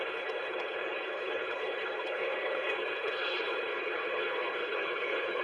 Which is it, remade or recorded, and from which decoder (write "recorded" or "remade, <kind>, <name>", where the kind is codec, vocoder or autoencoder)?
remade, codec, HILCodec